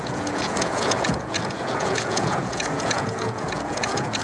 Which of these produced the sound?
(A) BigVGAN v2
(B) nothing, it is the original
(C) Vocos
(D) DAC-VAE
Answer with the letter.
C